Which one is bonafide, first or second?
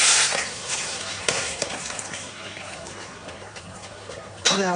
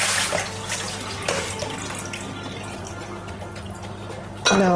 second